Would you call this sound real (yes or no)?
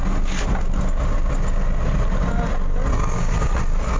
yes